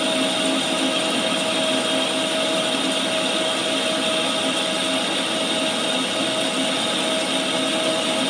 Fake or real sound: real